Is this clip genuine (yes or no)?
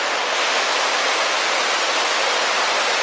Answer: yes